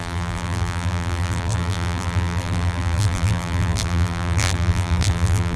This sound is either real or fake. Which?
fake